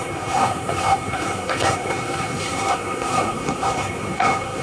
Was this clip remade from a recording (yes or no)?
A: yes